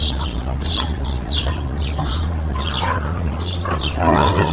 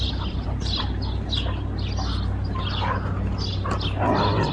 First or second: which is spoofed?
first